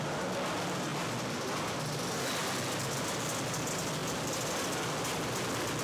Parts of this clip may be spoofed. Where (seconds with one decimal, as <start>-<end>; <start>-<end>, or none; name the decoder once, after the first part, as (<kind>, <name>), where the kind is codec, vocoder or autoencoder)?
none